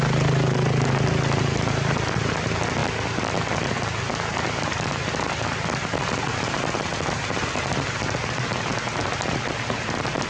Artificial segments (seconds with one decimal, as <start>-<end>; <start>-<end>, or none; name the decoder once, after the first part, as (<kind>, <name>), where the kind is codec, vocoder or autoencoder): none